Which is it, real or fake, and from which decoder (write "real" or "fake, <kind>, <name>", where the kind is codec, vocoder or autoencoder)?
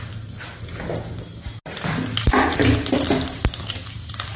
real